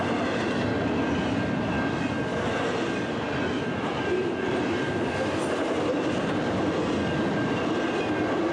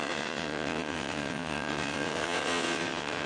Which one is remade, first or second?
second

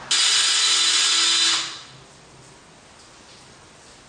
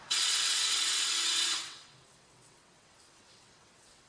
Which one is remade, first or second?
second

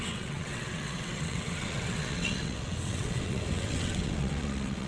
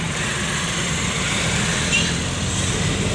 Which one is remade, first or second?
first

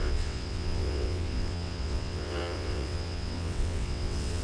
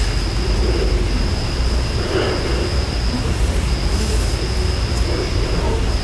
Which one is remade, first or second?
first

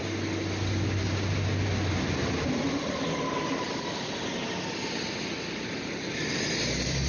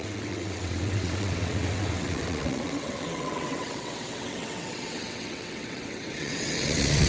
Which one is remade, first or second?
second